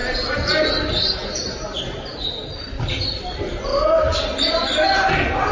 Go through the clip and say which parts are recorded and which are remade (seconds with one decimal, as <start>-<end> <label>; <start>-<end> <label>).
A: 0.0-5.5 recorded